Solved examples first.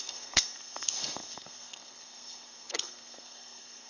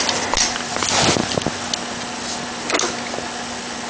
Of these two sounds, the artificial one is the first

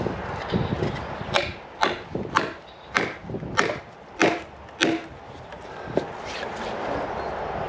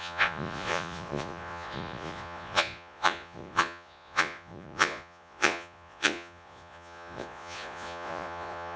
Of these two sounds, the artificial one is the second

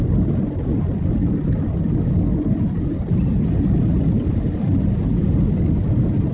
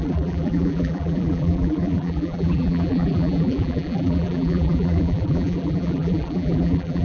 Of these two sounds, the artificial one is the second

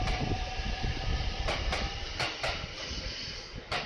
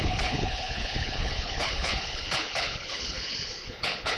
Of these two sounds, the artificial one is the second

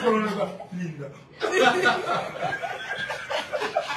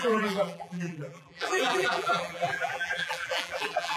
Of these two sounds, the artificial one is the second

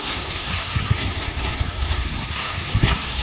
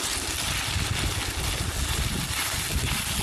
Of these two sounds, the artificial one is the first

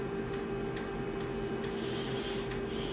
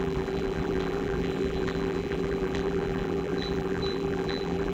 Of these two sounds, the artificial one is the second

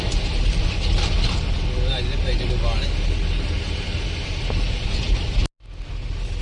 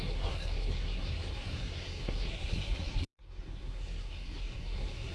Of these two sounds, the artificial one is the second